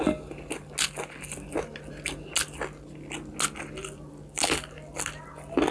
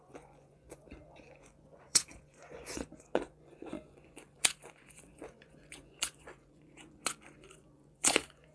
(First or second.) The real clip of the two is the first